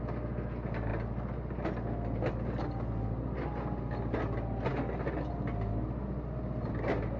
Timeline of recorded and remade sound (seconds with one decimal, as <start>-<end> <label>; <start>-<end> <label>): 0.0-7.2 recorded